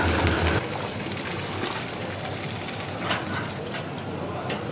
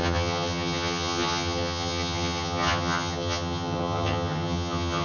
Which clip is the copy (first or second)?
second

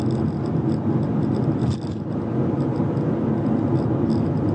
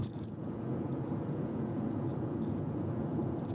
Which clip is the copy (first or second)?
second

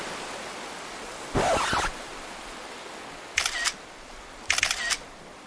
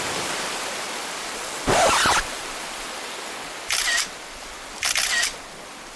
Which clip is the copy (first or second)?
second